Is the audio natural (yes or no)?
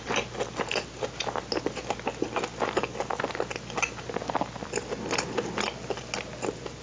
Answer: yes